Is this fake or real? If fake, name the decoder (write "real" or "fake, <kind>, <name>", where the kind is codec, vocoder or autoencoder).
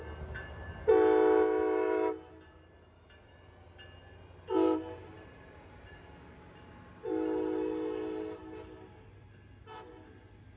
real